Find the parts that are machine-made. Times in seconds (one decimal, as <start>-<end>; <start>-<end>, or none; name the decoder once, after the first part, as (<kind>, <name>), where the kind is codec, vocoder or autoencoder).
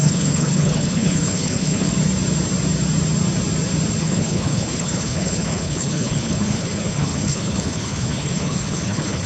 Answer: 0.0-1.9 (codec, HILCodec); 4.0-9.3